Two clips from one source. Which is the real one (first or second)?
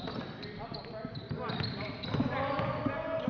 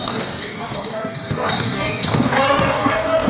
first